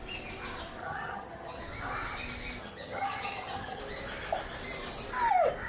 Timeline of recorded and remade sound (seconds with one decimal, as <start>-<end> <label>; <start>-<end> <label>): 0.0-0.8 recorded; 0.8-1.6 remade; 1.6-2.6 recorded; 2.6-3.8 remade; 3.8-5.7 recorded